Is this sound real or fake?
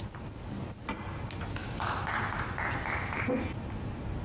real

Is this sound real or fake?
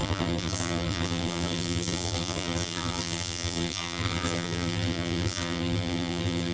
fake